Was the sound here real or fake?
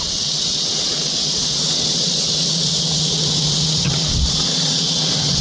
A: fake